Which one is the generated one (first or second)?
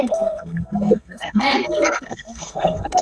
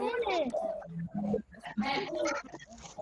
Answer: first